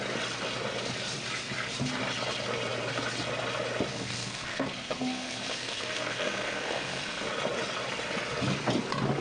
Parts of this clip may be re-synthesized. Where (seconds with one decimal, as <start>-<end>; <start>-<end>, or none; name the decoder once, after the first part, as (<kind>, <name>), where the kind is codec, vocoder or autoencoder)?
3.9-7.3 (codec, SNAC)